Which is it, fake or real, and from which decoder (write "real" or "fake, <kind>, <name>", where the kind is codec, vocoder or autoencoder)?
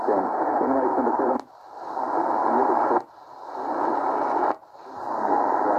real